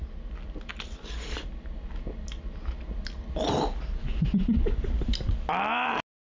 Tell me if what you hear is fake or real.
real